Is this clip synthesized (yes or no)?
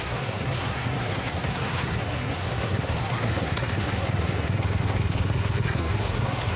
yes